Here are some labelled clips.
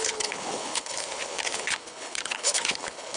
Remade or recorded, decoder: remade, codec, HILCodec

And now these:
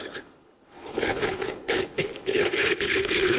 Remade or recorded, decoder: remade, codec, HILCodec